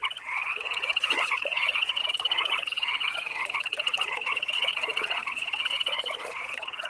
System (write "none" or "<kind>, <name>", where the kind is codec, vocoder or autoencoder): vocoder, Vocos